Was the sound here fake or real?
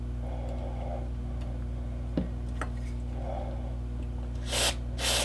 real